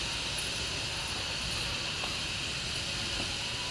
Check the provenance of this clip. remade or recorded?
recorded